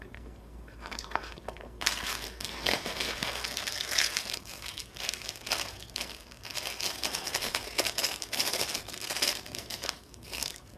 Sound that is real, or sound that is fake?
fake